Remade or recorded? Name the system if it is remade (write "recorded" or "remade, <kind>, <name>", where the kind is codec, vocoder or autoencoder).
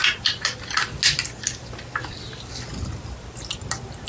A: recorded